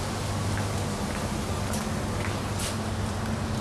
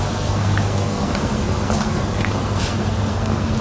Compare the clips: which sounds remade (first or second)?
second